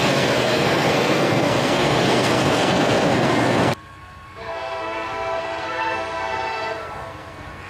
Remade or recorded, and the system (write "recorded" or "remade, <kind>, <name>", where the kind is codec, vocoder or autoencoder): remade, codec, SNAC